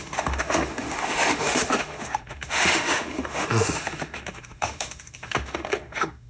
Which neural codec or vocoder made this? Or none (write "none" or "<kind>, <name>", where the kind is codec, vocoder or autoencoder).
autoencoder, DAC-VAE